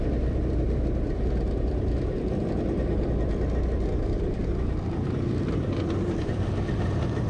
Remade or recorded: remade